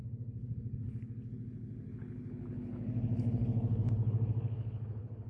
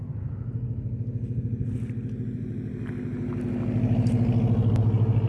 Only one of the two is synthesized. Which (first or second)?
first